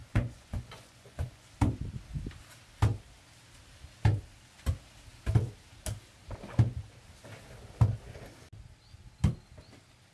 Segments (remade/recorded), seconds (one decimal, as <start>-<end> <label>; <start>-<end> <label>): 0.0-1.5 remade; 1.5-10.1 recorded